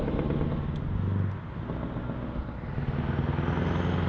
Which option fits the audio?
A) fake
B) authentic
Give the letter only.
B